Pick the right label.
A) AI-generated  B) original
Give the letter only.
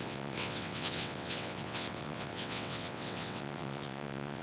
A